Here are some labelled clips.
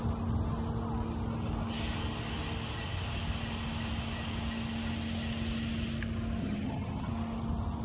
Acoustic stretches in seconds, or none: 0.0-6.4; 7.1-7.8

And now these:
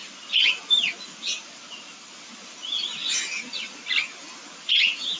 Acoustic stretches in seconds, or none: 0.0-5.2

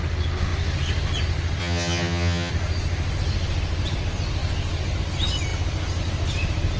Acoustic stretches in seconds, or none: 0.0-1.6; 2.5-6.8

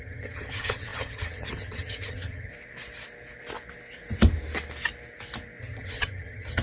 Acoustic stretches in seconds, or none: 2.5-5.6